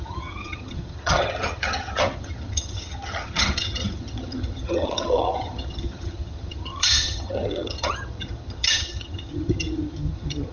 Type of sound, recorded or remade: remade